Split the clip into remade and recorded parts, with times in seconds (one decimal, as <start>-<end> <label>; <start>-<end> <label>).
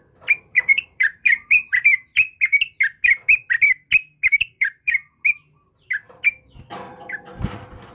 0.0-0.5 recorded; 0.5-2.1 remade; 2.1-4.3 recorded; 4.3-5.0 remade; 5.0-7.9 recorded